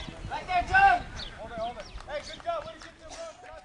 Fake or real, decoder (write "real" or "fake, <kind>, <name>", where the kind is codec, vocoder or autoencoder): real